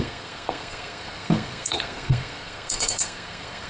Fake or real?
fake